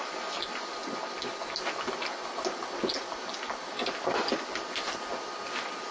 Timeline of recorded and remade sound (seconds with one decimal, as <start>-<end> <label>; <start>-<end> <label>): 0.0-3.7 recorded; 3.7-5.9 remade